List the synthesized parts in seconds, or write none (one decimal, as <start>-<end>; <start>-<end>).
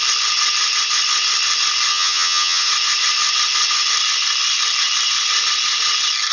1.9-2.7